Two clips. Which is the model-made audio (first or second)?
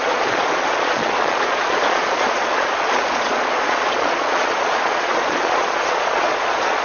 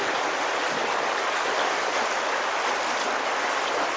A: first